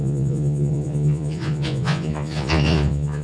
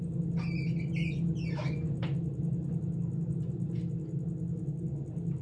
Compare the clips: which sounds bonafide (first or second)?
second